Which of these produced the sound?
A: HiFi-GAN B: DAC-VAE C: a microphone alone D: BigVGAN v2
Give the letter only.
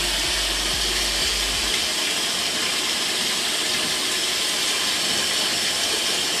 C